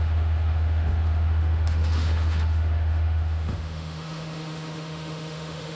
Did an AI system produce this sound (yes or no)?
yes